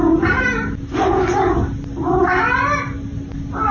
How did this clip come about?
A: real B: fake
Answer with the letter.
A